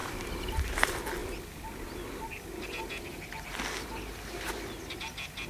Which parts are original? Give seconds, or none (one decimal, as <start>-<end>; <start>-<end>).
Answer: 0.0-5.5